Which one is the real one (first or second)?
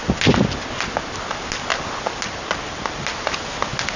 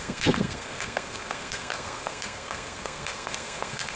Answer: first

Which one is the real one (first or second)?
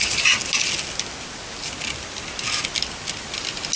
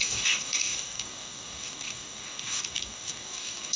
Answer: first